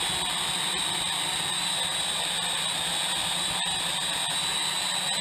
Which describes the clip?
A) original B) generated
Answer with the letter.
A